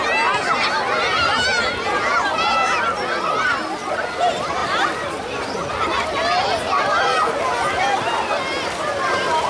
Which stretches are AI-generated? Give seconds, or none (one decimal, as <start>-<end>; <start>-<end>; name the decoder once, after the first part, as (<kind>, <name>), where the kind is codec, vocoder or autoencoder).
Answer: 4.6-7.0 (vocoder, BigVGAN v2)